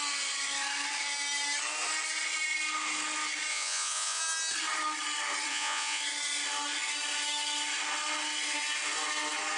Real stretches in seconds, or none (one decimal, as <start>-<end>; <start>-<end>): 0.0-3.5; 4.2-5.5; 6.0-9.6